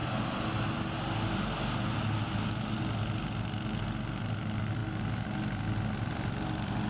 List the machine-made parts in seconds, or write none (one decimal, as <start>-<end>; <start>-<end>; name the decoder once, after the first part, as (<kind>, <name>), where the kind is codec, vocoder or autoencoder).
none